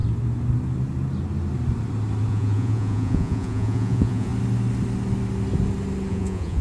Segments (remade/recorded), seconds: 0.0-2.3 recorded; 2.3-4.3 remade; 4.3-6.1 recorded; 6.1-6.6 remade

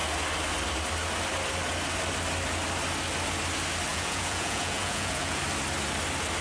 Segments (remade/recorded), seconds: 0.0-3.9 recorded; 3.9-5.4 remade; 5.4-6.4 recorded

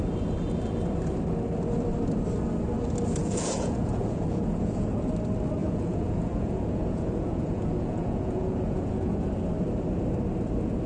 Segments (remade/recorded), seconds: 0.0-3.2 recorded; 3.2-5.1 remade; 5.1-5.6 recorded; 5.6-9.3 remade; 9.3-10.9 recorded

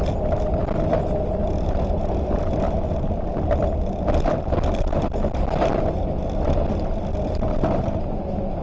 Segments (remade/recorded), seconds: 0.0-8.6 recorded